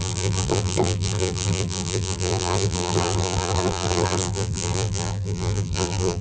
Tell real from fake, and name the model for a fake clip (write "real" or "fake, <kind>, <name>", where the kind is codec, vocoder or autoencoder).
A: fake, vocoder, BigVGAN v2